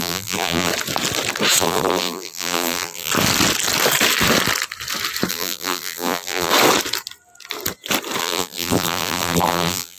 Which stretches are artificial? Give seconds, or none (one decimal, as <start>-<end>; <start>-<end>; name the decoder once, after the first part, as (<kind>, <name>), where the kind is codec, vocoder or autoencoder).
0.0-0.7 (vocoder, BigVGAN v2); 1.6-3.1; 5.3-6.5; 8.2-10.0